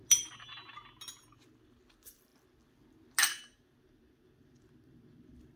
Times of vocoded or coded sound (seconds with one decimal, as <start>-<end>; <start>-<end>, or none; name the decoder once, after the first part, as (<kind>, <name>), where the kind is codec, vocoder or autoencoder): none